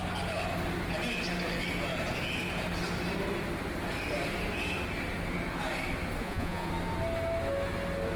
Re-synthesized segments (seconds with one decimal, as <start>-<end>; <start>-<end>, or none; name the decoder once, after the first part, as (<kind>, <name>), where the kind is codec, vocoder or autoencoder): 6.2-6.7 (vocoder, Vocos)